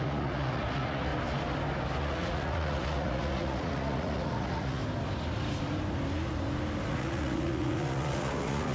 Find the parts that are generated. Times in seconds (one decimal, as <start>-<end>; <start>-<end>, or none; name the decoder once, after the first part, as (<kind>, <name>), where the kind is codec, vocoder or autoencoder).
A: 0.0-1.1 (vocoder, Vocos); 2.0-4.8; 6.9-8.7